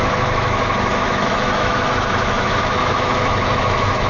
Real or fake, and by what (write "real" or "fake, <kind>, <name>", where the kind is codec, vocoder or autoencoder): fake, autoencoder, DAC-VAE